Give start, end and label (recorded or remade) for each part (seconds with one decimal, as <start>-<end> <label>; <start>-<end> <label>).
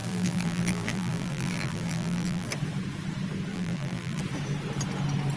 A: 0.0-2.5 remade; 2.5-3.5 recorded; 3.5-4.2 remade; 4.2-5.4 recorded